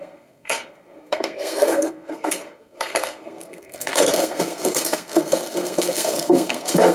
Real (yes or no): no